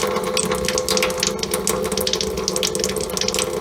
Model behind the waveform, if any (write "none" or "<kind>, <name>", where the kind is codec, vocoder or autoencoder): none